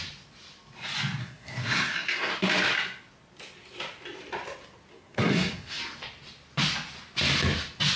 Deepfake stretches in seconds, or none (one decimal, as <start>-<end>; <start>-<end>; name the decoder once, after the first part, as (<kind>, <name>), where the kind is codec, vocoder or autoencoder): 1.2-2.3 (codec, SNAC); 4.9-5.8